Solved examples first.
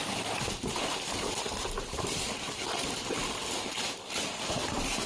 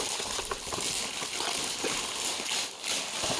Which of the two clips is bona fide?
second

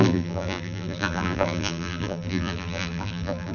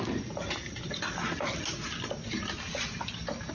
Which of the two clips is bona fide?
second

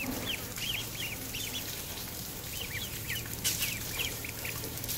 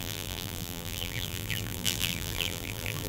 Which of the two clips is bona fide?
first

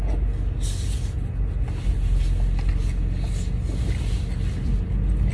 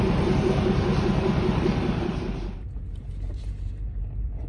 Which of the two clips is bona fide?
first